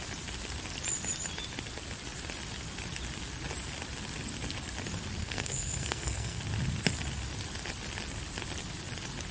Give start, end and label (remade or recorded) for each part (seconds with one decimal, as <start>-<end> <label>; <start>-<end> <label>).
0.0-5.2 recorded; 5.2-6.4 remade; 6.4-9.3 recorded

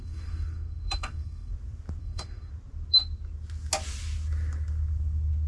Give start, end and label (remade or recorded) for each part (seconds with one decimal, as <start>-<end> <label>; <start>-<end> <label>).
0.0-1.5 remade; 1.5-2.0 recorded; 2.0-2.5 remade; 2.5-5.5 recorded

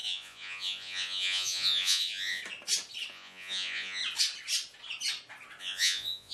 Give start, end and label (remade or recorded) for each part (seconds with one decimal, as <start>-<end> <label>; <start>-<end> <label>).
0.0-2.4 remade; 2.4-3.1 recorded; 3.1-4.0 remade; 4.0-5.6 recorded; 5.6-6.3 remade

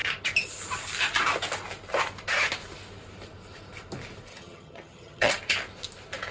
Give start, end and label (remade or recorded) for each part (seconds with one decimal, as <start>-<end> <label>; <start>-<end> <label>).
0.0-4.3 recorded; 4.3-5.3 remade; 5.3-6.3 recorded

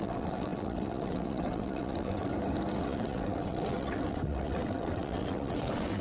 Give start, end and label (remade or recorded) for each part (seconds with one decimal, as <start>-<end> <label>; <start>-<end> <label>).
0.0-2.3 remade; 2.3-2.8 recorded; 2.8-6.0 remade

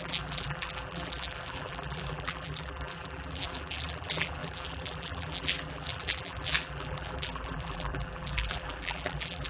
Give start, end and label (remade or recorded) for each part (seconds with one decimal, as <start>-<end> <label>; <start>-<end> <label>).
0.0-9.5 remade